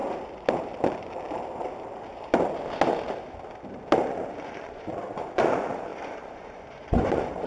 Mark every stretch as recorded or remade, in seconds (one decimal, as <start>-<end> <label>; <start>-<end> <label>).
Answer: 0.0-4.0 recorded; 4.0-7.5 remade